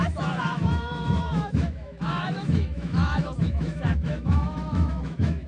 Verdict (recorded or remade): remade